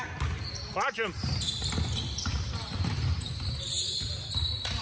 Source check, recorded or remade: recorded